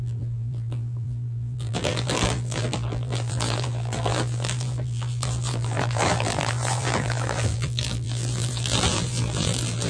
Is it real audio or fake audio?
fake